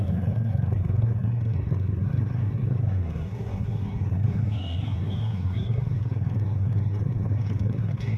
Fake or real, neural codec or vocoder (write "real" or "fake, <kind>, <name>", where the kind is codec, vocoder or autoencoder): fake, codec, SNAC